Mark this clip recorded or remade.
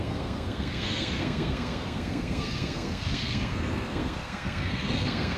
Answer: remade